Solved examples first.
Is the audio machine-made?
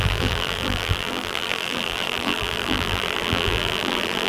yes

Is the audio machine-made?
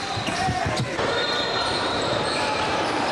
yes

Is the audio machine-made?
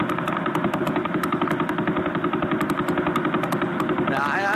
yes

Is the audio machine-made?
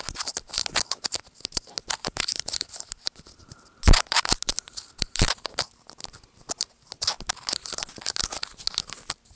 no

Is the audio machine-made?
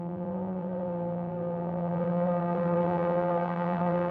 yes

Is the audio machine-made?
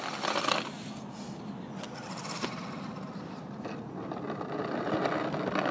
no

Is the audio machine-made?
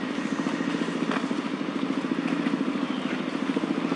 no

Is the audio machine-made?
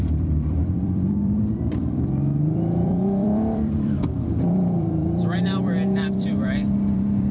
yes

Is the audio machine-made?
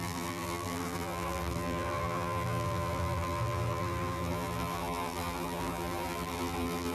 yes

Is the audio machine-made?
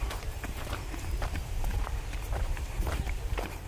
yes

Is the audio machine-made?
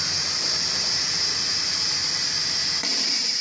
yes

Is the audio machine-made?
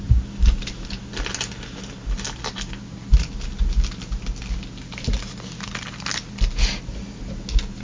no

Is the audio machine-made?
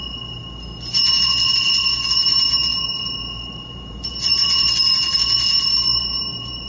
yes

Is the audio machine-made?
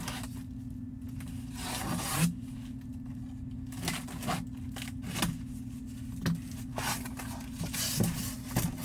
no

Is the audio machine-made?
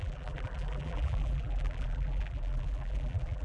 yes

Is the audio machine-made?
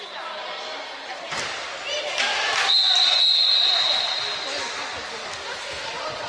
no